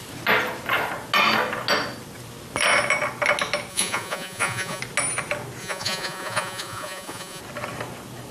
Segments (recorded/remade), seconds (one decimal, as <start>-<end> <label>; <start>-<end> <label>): 0.0-3.7 recorded; 3.7-4.8 remade; 4.8-5.6 recorded; 5.6-7.4 remade; 7.4-8.3 recorded